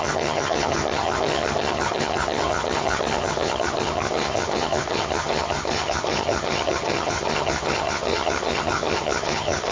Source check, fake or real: fake